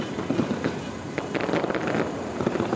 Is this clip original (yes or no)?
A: yes